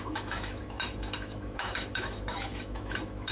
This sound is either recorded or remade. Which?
remade